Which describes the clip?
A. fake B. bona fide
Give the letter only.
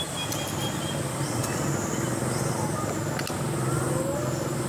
B